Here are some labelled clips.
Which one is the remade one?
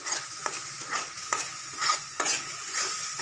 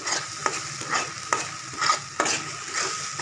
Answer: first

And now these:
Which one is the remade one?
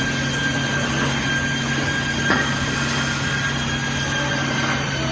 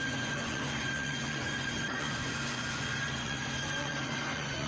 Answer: second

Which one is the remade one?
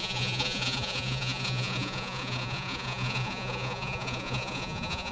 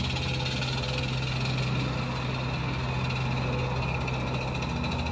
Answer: first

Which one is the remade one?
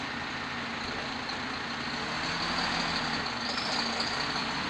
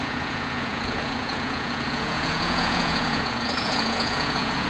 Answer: second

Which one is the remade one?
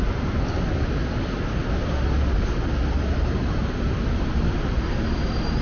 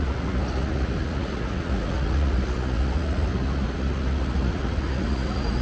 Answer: second